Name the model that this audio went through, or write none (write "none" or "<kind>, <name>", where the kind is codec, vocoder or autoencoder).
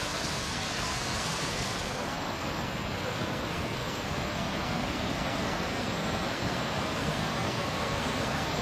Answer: codec, SNAC